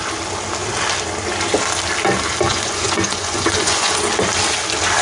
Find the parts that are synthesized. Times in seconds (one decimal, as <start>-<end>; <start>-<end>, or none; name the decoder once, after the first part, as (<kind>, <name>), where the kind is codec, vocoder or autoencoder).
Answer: 2.5-4.1 (vocoder, Vocos)